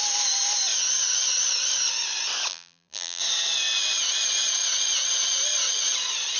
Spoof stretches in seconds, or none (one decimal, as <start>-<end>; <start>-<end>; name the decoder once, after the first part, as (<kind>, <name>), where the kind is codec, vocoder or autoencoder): 2.5-3.2 (vocoder, BigVGAN v2)